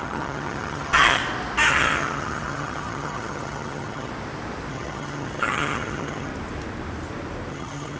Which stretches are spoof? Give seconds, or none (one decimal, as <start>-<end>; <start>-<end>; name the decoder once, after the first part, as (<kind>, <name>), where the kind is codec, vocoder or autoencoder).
0.0-1.2 (vocoder, HiFi-GAN); 1.7-4.1; 4.7-6.3; 7.5-8.0